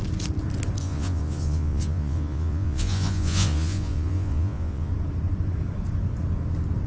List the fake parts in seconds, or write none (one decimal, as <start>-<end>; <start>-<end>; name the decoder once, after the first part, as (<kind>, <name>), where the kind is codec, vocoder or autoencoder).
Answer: 0.8-4.9 (vocoder, Vocos)